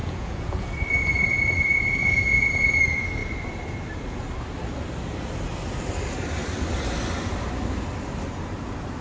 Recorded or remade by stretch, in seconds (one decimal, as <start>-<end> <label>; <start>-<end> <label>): 0.0-0.7 remade; 0.7-2.0 recorded; 2.0-2.8 remade; 2.8-9.0 recorded